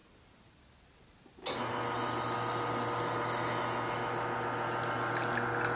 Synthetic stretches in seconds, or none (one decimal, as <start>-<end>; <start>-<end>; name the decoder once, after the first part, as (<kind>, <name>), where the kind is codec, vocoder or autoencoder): none